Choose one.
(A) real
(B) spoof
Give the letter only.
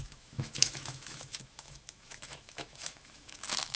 B